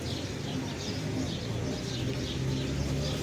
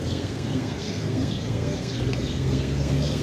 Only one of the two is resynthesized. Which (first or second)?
second